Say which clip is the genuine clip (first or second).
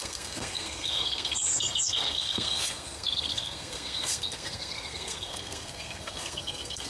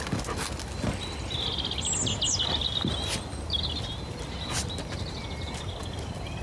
second